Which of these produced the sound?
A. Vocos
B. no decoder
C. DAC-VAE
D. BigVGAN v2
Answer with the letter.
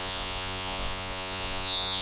A